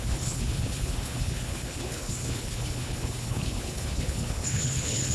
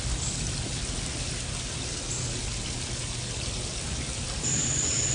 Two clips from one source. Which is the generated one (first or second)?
first